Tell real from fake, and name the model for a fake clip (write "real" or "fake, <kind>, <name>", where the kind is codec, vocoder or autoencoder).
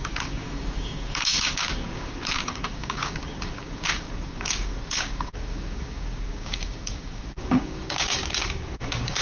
fake, codec, DAC